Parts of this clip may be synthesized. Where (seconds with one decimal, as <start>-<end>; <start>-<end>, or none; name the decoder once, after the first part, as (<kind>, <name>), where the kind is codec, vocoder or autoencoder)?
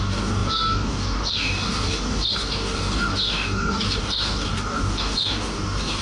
0.0-6.0 (codec, DAC)